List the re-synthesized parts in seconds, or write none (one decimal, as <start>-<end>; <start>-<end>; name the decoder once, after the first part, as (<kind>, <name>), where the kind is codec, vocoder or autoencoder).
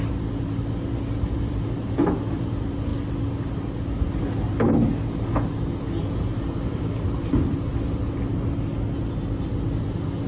none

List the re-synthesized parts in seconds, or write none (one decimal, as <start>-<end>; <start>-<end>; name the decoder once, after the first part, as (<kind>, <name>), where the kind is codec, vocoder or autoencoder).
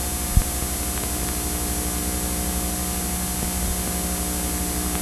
none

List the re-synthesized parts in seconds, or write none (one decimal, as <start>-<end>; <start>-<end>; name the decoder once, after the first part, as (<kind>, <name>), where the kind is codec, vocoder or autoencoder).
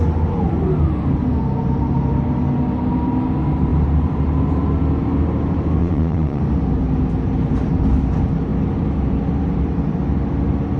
5.8-6.4 (vocoder, Vocos)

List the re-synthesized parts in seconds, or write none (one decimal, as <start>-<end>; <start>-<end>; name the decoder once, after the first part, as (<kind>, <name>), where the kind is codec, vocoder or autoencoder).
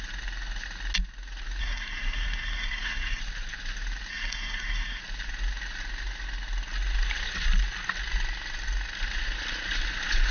1.6-3.2 (codec, SNAC); 4.1-5.0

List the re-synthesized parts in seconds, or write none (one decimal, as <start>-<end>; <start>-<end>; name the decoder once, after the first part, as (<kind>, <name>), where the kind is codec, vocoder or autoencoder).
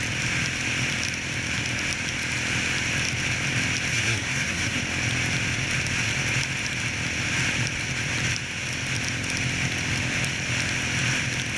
3.9-4.8 (codec, SNAC)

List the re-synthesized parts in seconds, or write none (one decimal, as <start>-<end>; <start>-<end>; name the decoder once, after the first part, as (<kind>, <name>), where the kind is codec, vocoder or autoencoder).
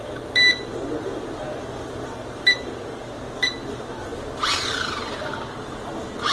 none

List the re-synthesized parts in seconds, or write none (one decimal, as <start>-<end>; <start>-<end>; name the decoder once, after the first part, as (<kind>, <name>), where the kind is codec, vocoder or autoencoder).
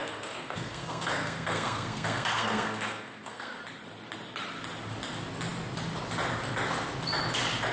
0.0-3.6 (codec, SNAC)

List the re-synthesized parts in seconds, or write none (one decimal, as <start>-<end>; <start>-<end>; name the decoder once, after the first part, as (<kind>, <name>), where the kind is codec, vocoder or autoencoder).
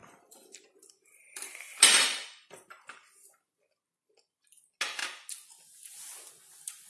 0.0-4.1 (vocoder, BigVGAN v2)